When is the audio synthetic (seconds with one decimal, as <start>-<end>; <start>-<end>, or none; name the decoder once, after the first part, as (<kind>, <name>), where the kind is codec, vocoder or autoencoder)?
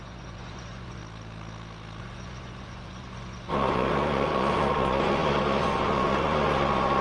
0.0-1.0 (vocoder, Vocos); 2.0-7.0